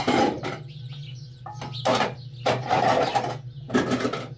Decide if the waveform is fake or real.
real